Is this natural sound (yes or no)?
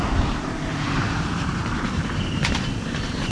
no